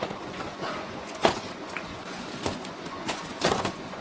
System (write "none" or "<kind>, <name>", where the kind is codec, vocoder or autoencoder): vocoder, Vocos